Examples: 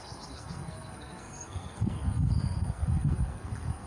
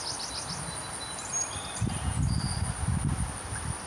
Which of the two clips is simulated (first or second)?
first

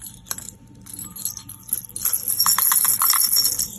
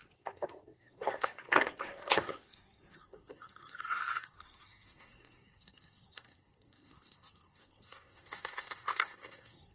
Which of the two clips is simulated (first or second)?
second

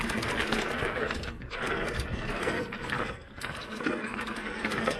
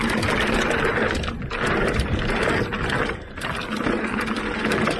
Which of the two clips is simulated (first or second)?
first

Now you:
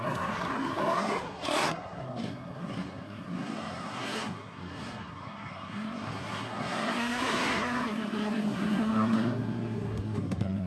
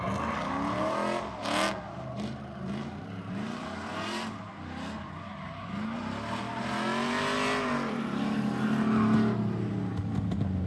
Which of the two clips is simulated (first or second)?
first